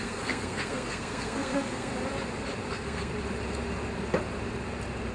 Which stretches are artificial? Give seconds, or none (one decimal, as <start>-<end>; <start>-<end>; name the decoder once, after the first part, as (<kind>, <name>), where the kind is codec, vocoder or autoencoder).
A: 0.0-1.9 (codec, SNAC); 2.7-3.1